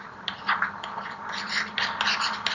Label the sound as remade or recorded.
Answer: recorded